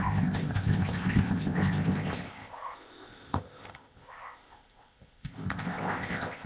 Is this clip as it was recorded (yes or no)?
no